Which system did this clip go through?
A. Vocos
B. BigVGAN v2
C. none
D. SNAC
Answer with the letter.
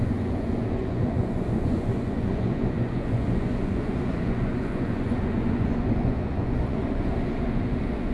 A